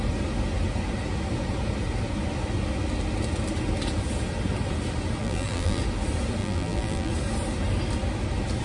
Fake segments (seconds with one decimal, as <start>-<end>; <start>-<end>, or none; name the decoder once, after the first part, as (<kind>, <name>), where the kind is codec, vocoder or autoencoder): 5.2-5.8 (vocoder, BigVGAN v2); 6.4-7.1